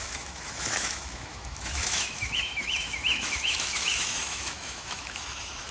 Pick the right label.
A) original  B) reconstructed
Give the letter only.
B